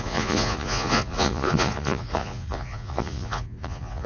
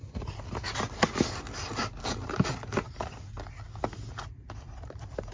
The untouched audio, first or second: second